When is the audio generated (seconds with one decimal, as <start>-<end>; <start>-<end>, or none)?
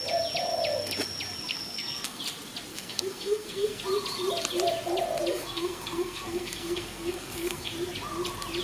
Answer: 1.5-2.2; 2.7-3.8; 5.3-7.7